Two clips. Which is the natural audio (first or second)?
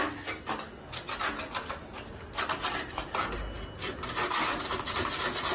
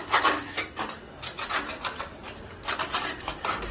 first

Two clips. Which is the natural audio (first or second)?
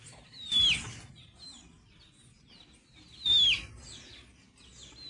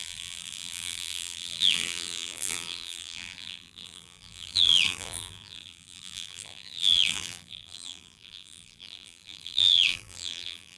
first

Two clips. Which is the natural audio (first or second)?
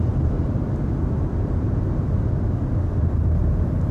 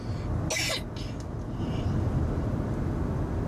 second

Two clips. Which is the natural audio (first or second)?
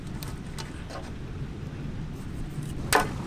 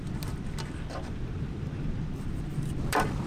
first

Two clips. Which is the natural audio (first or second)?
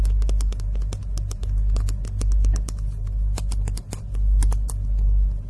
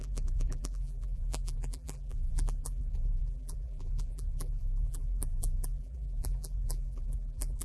first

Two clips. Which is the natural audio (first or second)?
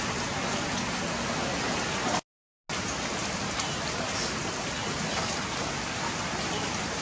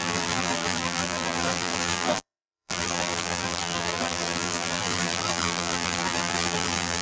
first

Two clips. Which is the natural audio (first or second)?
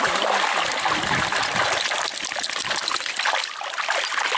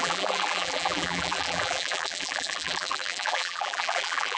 first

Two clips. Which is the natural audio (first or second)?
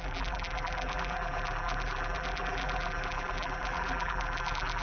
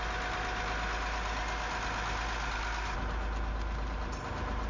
second